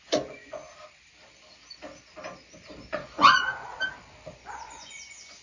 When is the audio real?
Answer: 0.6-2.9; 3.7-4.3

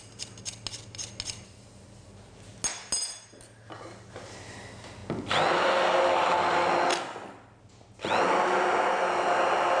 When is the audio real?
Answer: 0.0-9.8

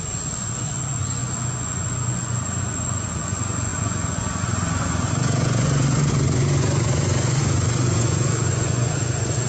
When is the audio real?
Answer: none

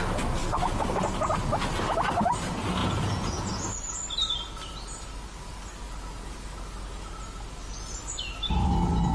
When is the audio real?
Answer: 0.0-2.8; 3.5-9.1

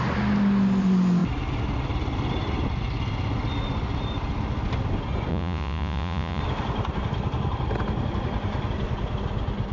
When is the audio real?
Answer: 0.0-5.3; 6.4-9.7